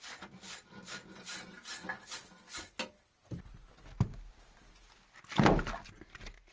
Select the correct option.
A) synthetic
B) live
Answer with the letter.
B